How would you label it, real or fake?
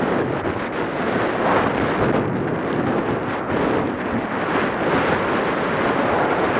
real